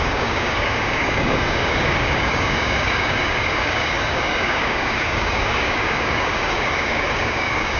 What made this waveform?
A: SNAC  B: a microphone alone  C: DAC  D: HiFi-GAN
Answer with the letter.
C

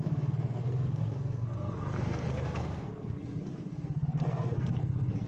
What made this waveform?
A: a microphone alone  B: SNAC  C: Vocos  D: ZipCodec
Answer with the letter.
B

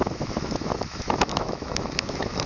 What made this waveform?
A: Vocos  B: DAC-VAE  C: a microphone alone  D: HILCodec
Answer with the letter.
B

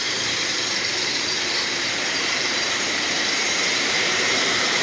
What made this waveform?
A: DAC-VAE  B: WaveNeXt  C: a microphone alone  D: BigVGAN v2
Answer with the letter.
D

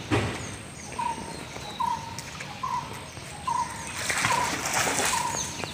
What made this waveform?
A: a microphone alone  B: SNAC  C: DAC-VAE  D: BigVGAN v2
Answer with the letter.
A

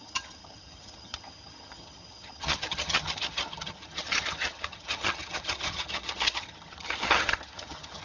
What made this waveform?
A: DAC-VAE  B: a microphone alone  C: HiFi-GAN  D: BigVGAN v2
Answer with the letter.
C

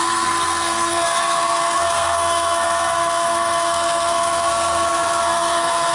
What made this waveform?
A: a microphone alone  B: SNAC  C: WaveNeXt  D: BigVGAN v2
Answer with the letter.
B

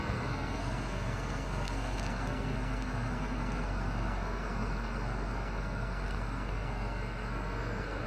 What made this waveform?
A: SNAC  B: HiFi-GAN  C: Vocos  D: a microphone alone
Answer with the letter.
A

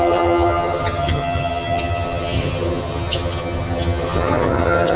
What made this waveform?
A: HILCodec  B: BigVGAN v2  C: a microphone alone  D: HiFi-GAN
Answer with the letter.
D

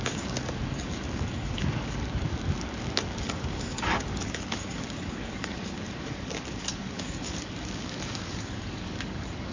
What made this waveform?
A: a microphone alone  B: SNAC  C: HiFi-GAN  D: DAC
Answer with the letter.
D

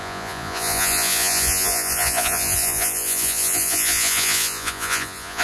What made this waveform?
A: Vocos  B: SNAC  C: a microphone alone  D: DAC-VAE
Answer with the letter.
A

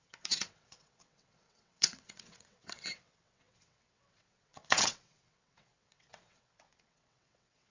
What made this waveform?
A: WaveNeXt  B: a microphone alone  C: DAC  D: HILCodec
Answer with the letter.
A